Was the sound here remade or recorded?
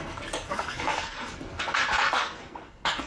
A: remade